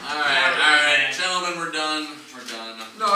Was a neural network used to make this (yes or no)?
no